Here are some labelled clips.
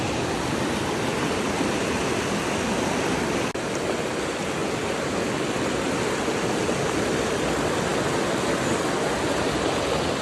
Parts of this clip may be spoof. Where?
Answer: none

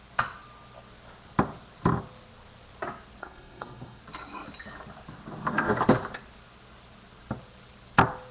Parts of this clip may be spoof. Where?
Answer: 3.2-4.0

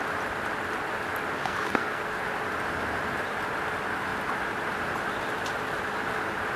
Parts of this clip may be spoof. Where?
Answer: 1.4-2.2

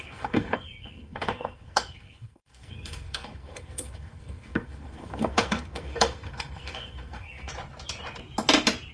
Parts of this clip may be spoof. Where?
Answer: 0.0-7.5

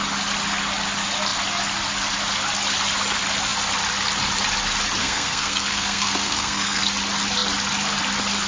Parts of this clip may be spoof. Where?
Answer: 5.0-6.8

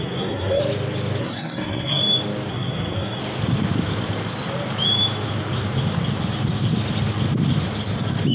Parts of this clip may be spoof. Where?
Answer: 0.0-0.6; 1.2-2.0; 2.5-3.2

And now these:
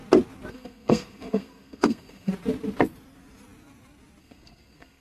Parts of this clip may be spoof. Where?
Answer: 0.5-2.3; 4.2-5.0